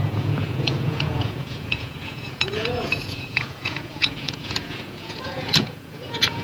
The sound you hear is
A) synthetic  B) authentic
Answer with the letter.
A